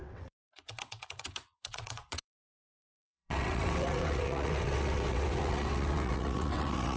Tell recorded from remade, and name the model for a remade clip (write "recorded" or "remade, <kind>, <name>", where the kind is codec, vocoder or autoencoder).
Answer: remade, vocoder, WaveNeXt